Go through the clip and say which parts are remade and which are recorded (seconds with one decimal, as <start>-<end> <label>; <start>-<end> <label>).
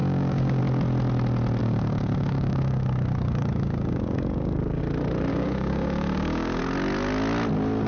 0.0-0.6 remade; 0.6-1.6 recorded; 1.6-4.8 remade; 4.8-5.3 recorded; 5.3-6.6 remade; 6.6-7.9 recorded